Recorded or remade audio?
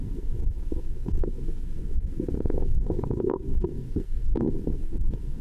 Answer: remade